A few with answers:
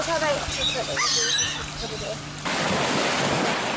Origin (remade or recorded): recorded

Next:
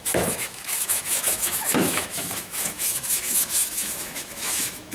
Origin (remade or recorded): remade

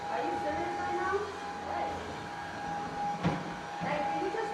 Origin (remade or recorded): recorded